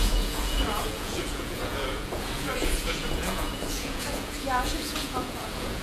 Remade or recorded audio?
remade